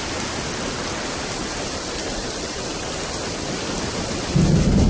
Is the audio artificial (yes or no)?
no